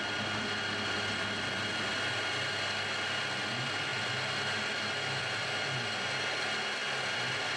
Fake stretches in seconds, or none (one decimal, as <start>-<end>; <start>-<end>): none